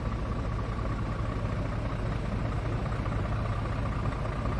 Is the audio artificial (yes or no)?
no